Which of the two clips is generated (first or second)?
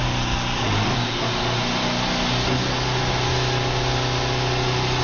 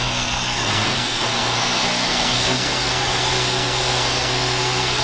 second